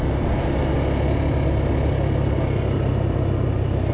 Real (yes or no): yes